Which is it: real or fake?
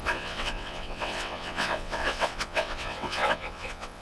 fake